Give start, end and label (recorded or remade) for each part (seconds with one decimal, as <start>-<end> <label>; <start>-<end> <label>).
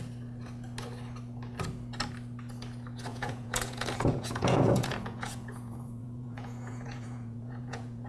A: 0.0-3.1 recorded; 3.1-8.1 remade